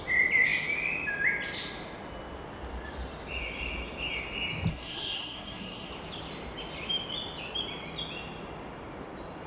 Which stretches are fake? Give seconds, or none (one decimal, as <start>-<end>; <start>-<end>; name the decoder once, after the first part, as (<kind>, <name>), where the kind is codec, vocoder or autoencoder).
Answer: 4.7-5.9 (codec, SNAC)